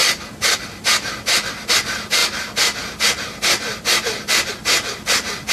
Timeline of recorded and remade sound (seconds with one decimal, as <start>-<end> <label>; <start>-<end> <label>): 0.0-5.5 recorded